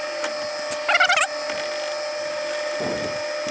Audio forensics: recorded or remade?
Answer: recorded